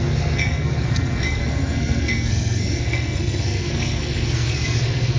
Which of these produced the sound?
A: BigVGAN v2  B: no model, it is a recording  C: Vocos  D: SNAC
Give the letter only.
D